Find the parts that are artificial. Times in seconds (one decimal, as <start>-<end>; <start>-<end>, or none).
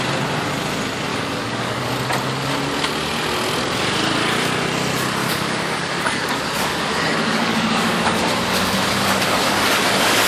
1.1-1.8; 5.2-10.3